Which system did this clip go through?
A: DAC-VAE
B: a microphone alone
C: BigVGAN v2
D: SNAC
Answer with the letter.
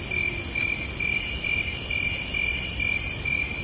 B